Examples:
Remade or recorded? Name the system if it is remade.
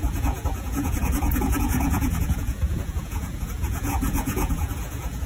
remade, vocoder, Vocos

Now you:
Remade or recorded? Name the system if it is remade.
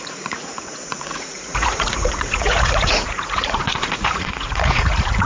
remade, vocoder, Vocos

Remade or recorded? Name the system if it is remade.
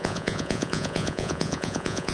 remade, vocoder, Vocos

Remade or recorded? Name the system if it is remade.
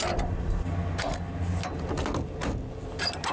recorded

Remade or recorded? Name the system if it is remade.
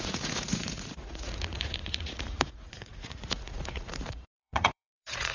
remade, vocoder, Vocos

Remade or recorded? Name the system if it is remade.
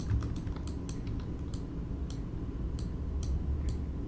recorded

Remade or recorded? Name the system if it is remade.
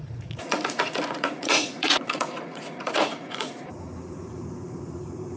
remade, vocoder, Vocos